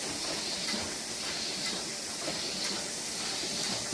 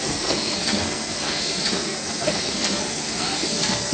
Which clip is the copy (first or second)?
second